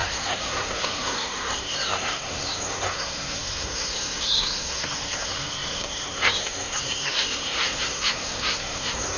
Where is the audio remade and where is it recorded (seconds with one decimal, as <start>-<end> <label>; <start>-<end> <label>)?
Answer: 0.0-9.2 remade